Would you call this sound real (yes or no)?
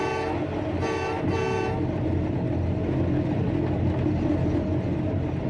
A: yes